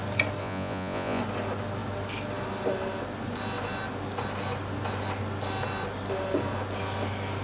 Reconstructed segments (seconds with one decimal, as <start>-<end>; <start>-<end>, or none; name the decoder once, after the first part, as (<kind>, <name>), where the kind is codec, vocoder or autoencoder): 0.4-1.2 (vocoder, Vocos)